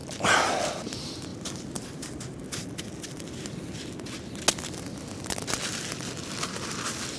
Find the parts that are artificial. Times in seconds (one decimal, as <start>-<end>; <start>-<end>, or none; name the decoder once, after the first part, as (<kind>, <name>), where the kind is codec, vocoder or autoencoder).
none